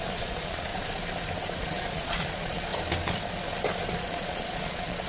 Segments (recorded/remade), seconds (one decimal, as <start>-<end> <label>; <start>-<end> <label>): 0.0-0.7 remade; 0.7-1.6 recorded; 1.6-2.7 remade; 2.7-3.9 recorded; 3.9-5.1 remade